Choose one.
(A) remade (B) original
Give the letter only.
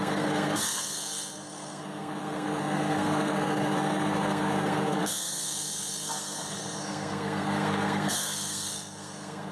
A